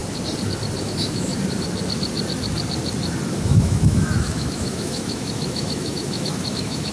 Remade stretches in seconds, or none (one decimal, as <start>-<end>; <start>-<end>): 0.8-1.3; 3.3-6.9